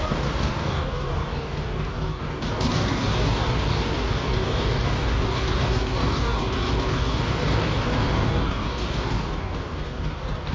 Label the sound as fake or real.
fake